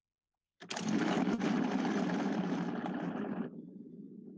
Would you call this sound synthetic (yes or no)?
no